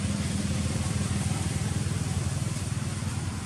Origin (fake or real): real